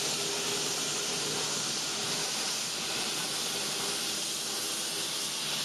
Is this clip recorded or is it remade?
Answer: recorded